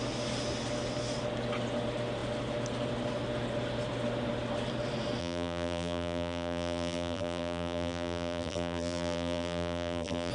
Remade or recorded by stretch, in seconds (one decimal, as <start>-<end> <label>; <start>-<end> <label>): 0.0-5.2 recorded; 5.2-10.3 remade